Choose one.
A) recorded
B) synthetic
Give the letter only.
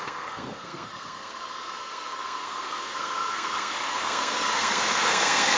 B